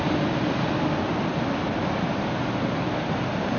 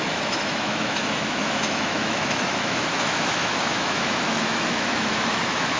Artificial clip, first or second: second